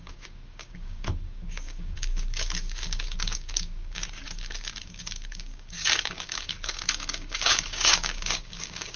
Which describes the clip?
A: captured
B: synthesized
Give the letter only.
B